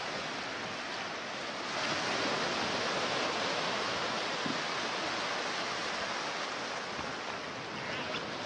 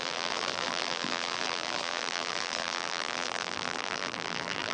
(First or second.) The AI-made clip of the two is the second